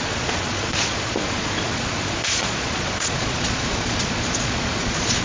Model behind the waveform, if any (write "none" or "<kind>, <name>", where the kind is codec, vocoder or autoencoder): vocoder, Vocos